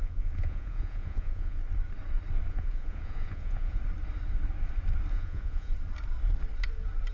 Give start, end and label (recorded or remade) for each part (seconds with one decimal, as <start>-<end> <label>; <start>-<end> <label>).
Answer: 0.0-1.6 remade; 1.6-2.5 recorded; 2.5-3.8 remade; 3.8-5.1 recorded; 5.1-5.7 remade; 5.7-7.1 recorded